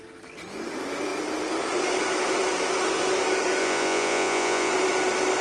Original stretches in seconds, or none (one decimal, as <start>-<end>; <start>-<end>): 0.0-3.6; 4.7-5.4